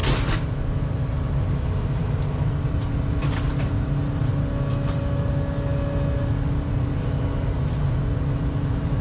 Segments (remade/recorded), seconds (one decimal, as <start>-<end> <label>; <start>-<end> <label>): 0.0-9.0 recorded